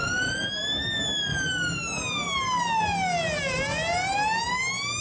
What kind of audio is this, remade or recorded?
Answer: recorded